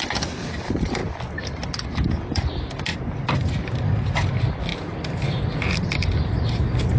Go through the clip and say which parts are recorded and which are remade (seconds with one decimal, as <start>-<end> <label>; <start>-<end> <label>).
0.0-1.0 remade; 1.0-2.1 recorded; 2.1-4.7 remade; 4.7-5.5 recorded; 5.5-7.0 remade